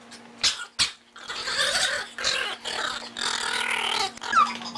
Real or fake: real